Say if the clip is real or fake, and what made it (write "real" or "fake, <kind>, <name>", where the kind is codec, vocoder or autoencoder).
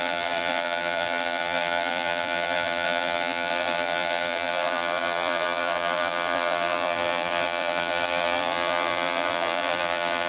fake, vocoder, BigVGAN v2